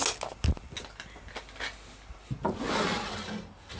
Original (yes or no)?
yes